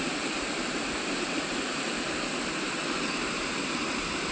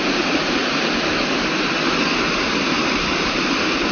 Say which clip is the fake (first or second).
first